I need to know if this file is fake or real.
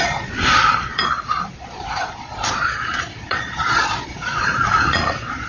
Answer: fake